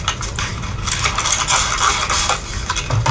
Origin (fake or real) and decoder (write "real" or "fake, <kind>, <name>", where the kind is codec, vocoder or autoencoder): real